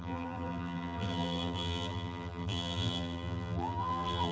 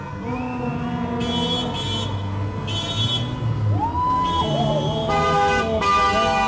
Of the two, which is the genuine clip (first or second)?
second